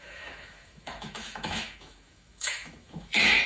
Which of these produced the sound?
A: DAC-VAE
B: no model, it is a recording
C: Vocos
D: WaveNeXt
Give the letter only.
A